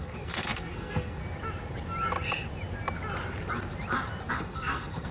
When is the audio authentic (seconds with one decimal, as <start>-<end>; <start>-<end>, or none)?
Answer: 1.2-4.3

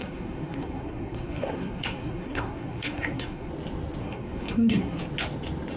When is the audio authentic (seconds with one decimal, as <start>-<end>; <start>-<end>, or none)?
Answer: 3.5-4.0; 5.0-5.8

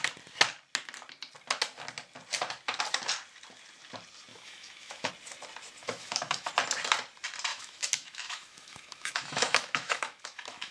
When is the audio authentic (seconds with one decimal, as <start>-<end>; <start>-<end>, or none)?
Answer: 0.0-4.3; 5.1-5.8; 6.5-7.5

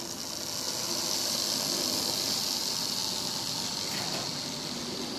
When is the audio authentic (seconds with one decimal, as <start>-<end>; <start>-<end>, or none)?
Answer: 0.0-5.2

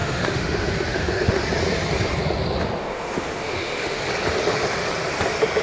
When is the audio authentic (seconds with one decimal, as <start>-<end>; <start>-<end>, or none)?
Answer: 1.4-2.8; 4.0-5.6